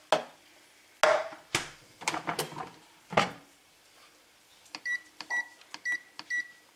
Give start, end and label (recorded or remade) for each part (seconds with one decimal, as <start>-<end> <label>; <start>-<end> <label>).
0.0-1.1 recorded; 1.1-3.7 remade; 3.7-4.5 recorded; 4.5-5.3 remade; 5.3-6.8 recorded